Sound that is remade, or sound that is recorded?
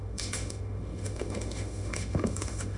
remade